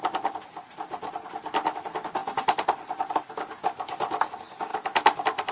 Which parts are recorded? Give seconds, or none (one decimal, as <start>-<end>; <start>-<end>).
0.0-5.5